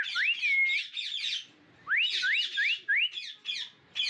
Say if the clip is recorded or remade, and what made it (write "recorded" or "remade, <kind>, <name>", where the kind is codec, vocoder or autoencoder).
recorded